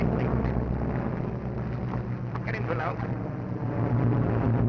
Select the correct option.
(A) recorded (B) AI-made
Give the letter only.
A